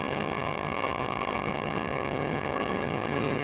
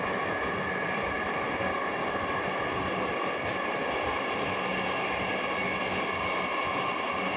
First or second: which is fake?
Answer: first